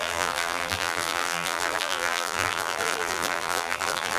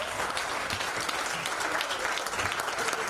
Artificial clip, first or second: first